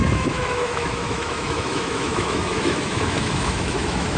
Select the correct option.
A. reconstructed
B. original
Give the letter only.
A